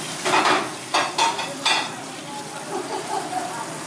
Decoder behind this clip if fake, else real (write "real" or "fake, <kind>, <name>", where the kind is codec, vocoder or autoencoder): real